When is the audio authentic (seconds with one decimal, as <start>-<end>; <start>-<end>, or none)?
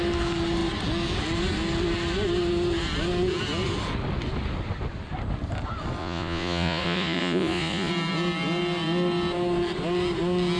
0.0-6.0; 7.9-10.6